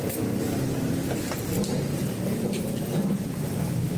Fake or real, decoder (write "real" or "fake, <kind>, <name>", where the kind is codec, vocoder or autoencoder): real